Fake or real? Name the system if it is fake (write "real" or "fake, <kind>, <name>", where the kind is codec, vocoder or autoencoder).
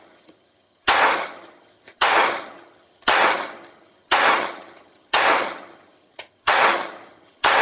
fake, vocoder, HiFi-GAN